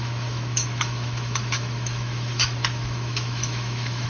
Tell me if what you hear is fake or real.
fake